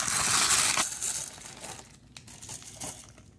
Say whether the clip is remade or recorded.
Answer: recorded